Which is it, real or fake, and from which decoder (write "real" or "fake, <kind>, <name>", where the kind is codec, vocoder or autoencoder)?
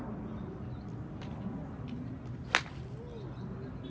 real